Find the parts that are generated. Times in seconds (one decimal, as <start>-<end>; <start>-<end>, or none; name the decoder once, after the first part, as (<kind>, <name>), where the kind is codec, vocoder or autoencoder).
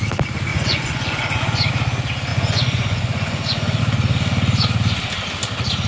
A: 0.5-1.7 (vocoder, Vocos); 2.3-3.8